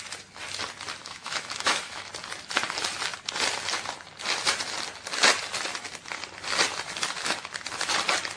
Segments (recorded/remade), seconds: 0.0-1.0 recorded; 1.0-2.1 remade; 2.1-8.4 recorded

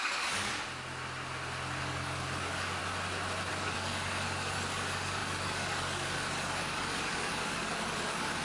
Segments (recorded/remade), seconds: 0.0-0.5 remade; 0.5-1.8 recorded; 1.8-2.8 remade; 2.8-3.5 recorded; 3.5-8.4 remade

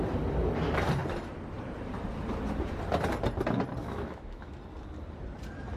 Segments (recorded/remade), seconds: 0.0-3.8 recorded; 3.8-4.5 remade; 4.5-5.8 recorded